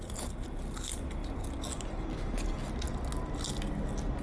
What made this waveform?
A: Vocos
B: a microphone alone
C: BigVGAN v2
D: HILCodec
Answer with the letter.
B